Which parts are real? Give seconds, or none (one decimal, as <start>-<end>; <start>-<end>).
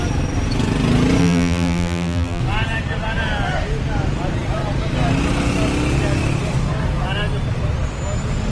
0.0-1.2; 2.4-8.5